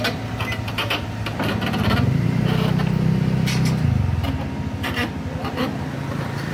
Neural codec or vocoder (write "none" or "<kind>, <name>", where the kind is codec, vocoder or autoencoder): none